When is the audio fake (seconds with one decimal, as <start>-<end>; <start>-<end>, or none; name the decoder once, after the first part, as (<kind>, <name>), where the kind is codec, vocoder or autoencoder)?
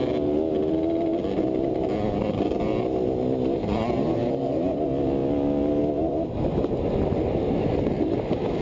none